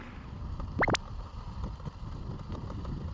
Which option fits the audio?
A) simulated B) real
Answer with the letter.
B